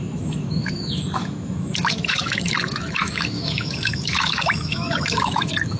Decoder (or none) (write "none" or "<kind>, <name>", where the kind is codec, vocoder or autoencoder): autoencoder, DAC-VAE